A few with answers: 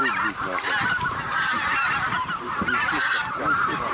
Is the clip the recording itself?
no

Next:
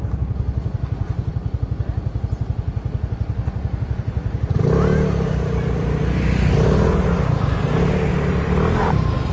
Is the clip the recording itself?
yes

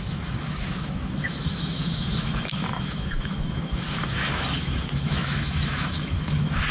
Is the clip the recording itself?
no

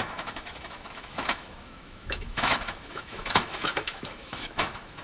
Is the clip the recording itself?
no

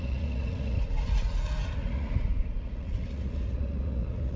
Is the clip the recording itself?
no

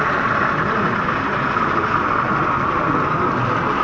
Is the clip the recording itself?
yes